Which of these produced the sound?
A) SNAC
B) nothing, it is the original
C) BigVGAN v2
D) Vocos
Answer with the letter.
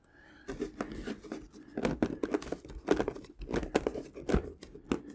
B